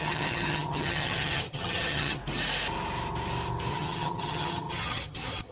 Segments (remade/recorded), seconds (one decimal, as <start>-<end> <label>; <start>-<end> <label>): 0.0-2.2 remade; 2.2-3.7 recorded; 3.7-5.5 remade